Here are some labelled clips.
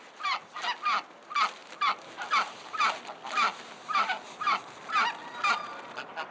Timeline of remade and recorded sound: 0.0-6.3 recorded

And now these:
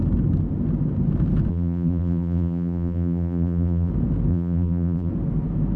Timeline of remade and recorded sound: 0.0-1.5 recorded; 1.5-3.9 remade; 3.9-4.3 recorded; 4.3-5.1 remade; 5.1-5.8 recorded

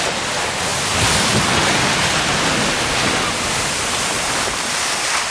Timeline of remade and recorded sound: 0.0-5.3 recorded

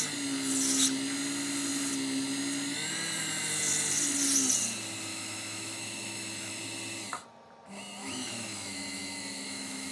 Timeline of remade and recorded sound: 0.0-5.1 recorded; 5.1-6.6 remade; 6.6-8.0 recorded; 8.0-9.9 remade

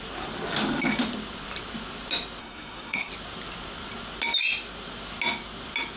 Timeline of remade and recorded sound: 0.0-2.4 recorded; 2.4-3.1 remade; 3.1-6.0 recorded

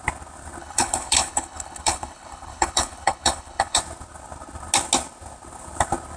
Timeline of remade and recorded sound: 0.0-0.6 recorded; 0.6-3.8 remade; 3.8-6.2 recorded